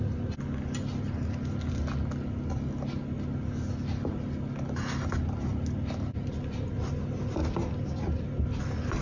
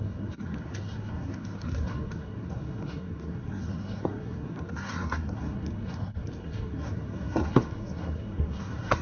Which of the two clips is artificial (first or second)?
second